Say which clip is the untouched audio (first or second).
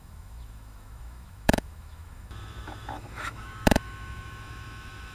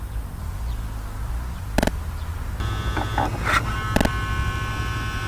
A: second